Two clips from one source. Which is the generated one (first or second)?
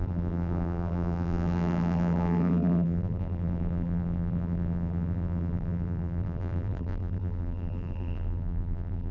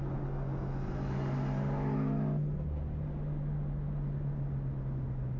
first